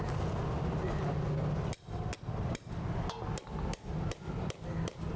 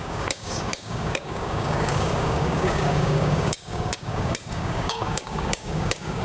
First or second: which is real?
first